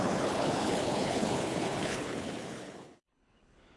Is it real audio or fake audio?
fake